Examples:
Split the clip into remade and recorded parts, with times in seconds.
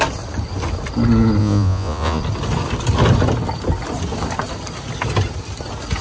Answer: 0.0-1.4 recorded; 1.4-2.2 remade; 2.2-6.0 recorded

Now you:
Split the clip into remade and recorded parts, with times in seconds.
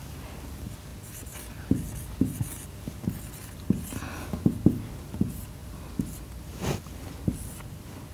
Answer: 0.0-8.1 recorded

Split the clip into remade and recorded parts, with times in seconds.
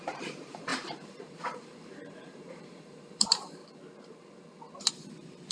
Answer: 0.0-3.6 remade; 3.6-4.9 recorded; 4.9-5.5 remade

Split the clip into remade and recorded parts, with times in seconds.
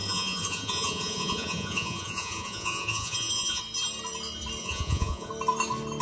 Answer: 0.0-3.6 remade; 3.6-4.6 recorded; 4.6-5.3 remade; 5.3-6.0 recorded